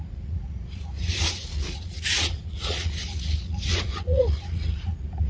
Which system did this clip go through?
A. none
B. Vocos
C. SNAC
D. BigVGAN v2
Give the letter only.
B